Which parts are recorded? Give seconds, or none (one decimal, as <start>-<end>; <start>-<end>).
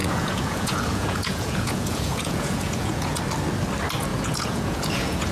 3.2-4.1